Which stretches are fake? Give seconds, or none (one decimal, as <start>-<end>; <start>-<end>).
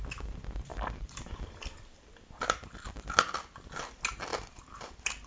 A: 0.7-3.2; 4.3-5.3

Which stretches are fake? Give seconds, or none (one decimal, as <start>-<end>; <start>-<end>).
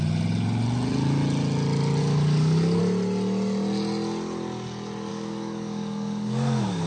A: 2.0-2.8; 5.1-6.9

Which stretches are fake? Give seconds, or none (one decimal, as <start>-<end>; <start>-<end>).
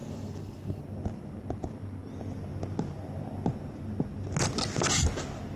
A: 0.0-0.8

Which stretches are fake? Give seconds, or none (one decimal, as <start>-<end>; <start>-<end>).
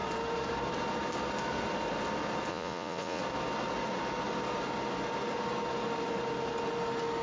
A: 2.5-3.2